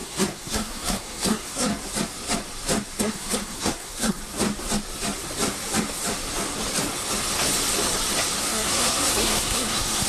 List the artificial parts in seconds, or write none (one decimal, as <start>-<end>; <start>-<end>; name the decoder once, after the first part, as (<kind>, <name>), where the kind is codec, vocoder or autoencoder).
0.0-1.7 (codec, SNAC); 3.0-4.2; 8.4-10.1